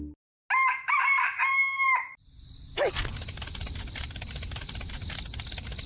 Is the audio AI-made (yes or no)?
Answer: no